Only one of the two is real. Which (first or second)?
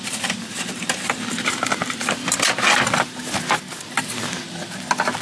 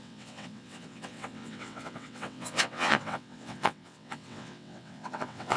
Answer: first